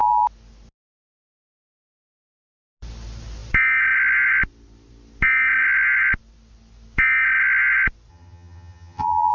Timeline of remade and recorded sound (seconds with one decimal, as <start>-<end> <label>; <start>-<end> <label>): 0.0-8.1 recorded; 8.1-9.3 remade